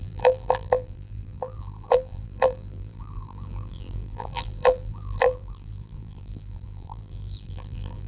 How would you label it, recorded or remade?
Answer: remade